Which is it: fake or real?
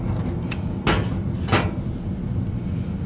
real